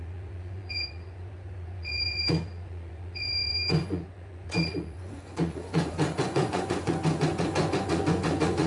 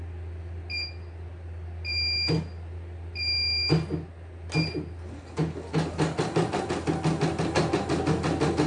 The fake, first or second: first